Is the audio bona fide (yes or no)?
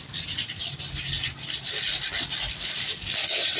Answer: yes